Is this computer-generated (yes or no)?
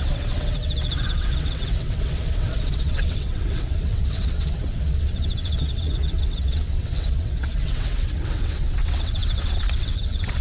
yes